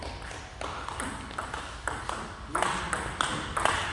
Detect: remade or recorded recorded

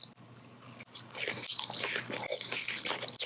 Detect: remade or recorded recorded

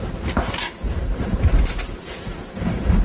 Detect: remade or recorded recorded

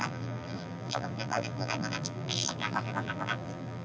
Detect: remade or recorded remade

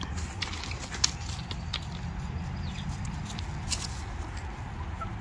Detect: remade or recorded recorded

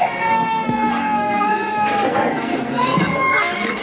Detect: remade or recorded remade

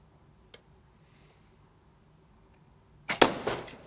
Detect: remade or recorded recorded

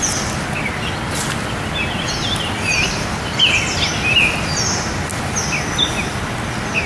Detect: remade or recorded recorded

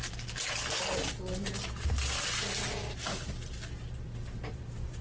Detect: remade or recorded recorded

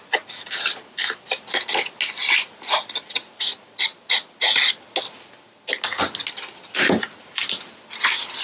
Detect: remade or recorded recorded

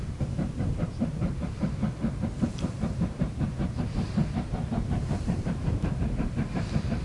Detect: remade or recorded remade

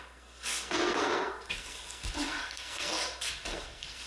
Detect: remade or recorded remade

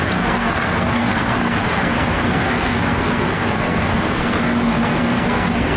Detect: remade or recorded remade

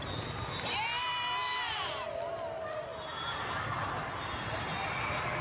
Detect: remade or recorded recorded